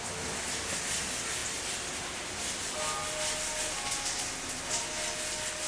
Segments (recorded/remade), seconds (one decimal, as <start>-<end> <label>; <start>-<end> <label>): 0.0-5.7 recorded